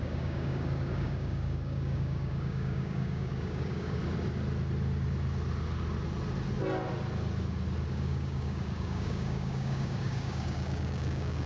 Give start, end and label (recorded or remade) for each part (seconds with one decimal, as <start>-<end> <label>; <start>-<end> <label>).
0.0-4.0 remade; 4.0-7.9 recorded; 7.9-11.5 remade